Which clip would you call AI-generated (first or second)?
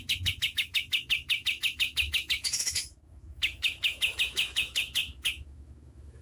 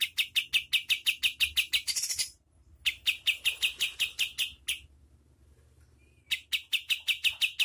first